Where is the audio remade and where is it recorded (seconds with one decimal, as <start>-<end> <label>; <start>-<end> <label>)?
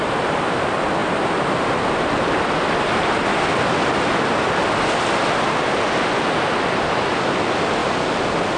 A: 0.0-8.6 recorded